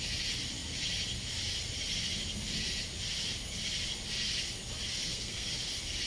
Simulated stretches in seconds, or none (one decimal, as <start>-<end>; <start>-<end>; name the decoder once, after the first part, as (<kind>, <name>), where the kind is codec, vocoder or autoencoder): 4.9-5.5 (codec, SNAC)